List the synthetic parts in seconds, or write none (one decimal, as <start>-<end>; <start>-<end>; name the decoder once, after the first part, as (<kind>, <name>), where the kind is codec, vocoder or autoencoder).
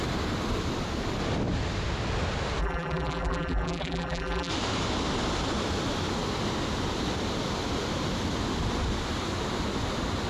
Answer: 2.6-4.5 (vocoder, BigVGAN v2)